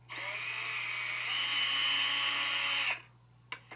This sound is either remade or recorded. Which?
recorded